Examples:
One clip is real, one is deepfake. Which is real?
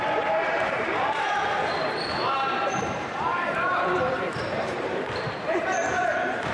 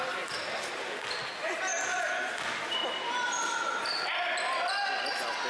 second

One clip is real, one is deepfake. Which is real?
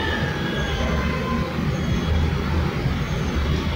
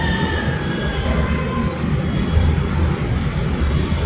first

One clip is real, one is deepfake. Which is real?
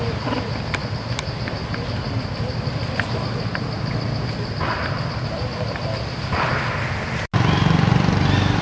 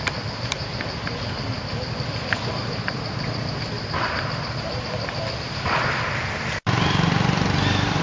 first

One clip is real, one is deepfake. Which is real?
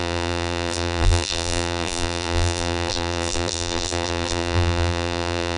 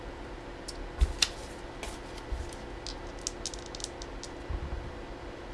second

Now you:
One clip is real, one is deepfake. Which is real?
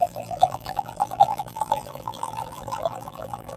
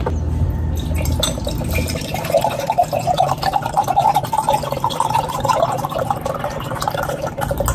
second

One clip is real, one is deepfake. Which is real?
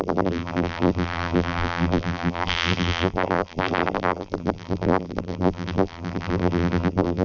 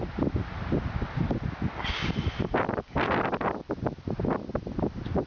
second